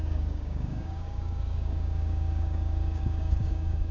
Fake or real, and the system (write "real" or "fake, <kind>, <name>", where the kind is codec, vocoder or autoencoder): fake, codec, DAC